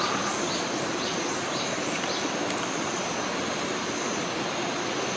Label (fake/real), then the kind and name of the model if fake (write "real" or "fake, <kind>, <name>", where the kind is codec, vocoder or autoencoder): real